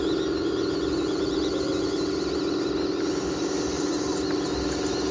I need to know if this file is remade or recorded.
recorded